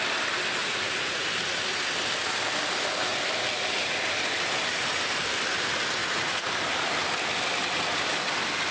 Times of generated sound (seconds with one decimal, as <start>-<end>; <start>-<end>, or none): 0.6-1.3; 6.0-6.5